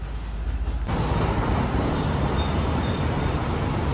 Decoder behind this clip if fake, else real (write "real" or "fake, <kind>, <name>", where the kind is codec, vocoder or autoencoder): real